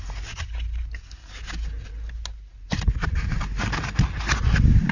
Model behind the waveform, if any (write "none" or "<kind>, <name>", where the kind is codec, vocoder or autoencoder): none